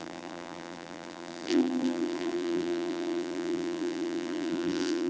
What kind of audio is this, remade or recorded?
remade